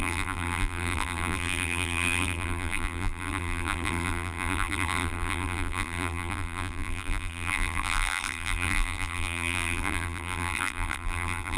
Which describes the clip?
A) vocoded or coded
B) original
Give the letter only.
A